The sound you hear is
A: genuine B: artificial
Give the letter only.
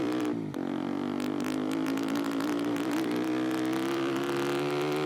B